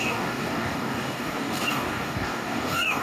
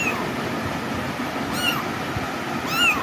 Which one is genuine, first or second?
second